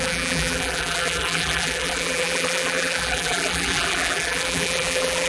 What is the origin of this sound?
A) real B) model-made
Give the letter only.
B